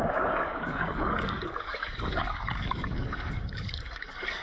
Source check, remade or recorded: remade